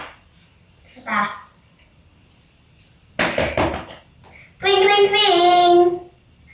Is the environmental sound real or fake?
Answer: real